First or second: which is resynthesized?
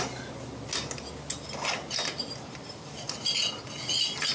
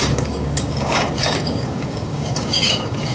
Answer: second